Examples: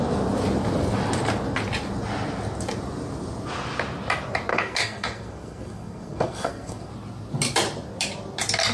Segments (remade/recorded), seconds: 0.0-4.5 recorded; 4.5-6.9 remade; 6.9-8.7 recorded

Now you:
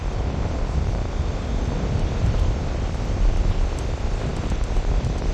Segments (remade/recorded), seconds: 0.0-5.3 remade

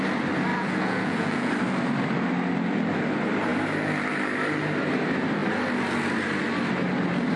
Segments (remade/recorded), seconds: 0.0-0.5 recorded; 0.5-1.5 remade; 1.5-7.4 recorded

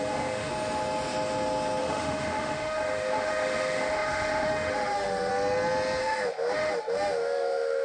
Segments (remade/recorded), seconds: 0.0-0.5 remade; 0.5-1.8 recorded; 1.8-5.3 remade; 5.3-6.0 recorded; 6.0-7.8 remade